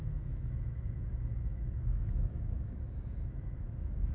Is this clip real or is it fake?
fake